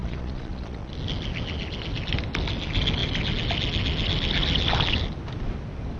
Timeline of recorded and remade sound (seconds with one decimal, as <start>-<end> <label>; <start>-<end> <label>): 0.0-0.9 remade; 0.9-6.0 recorded